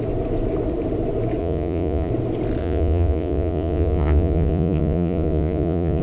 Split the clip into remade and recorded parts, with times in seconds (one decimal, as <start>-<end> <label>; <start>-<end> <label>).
0.0-1.4 recorded; 1.4-2.1 remade; 2.1-2.6 recorded; 2.6-6.0 remade